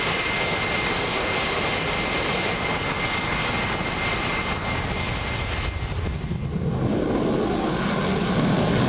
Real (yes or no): yes